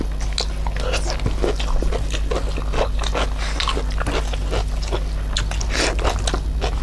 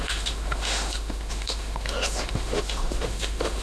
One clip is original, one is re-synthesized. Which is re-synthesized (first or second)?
second